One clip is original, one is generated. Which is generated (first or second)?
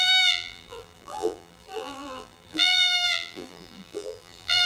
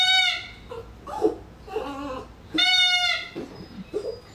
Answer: first